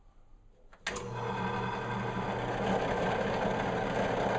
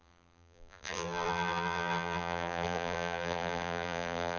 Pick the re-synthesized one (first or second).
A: second